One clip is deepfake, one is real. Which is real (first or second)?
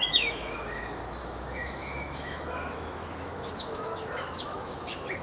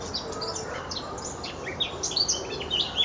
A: second